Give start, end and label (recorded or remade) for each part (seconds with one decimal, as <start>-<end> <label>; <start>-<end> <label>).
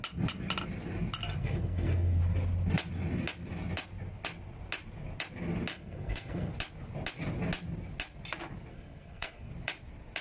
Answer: 0.0-1.4 recorded; 1.4-2.2 remade; 2.2-5.7 recorded; 5.7-6.5 remade; 6.5-8.7 recorded; 8.7-9.5 remade; 9.5-10.2 recorded